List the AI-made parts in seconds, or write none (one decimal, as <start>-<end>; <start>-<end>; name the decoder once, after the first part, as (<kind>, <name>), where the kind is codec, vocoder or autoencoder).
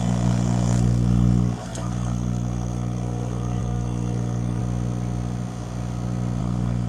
0.0-4.6 (codec, SNAC); 6.4-6.9